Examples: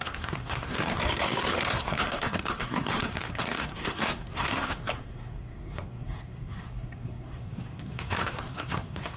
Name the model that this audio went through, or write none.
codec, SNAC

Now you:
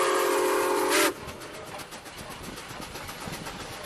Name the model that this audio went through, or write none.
none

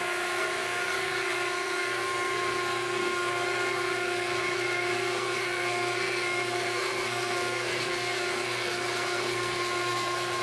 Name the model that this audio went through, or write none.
codec, SNAC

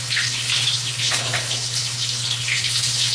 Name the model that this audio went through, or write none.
codec, HILCodec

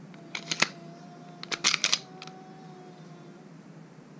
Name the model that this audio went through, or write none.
none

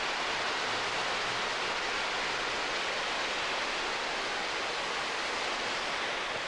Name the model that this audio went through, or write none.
none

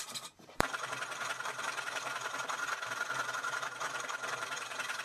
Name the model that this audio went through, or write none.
vocoder, BigVGAN v2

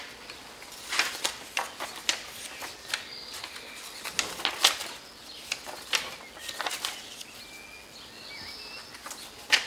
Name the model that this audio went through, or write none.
none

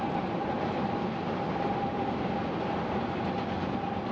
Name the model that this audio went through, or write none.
none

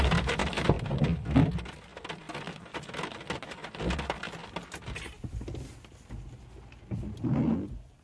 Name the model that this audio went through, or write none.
none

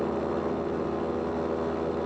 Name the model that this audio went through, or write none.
none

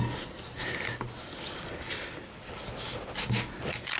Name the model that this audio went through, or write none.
none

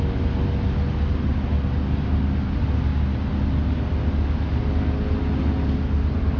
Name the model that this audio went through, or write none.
none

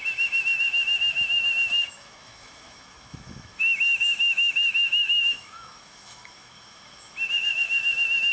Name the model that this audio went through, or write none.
autoencoder, DAC-VAE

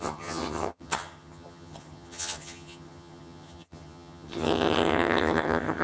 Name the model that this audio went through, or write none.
vocoder, HiFi-GAN